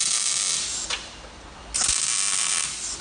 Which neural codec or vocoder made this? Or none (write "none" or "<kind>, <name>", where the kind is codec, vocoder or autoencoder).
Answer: none